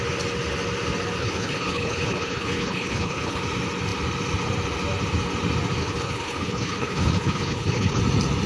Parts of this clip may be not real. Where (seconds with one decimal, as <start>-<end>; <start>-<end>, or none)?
1.2-3.4; 5.8-8.0